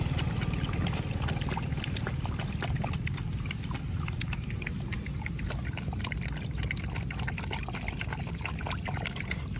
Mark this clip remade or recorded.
recorded